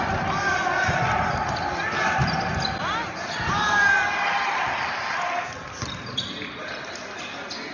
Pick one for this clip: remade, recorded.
recorded